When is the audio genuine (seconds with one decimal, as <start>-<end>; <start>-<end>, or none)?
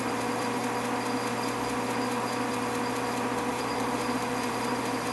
0.6-3.5